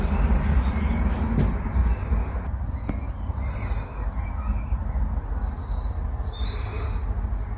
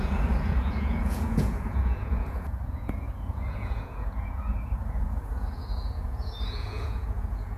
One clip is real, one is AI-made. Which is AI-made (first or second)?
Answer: second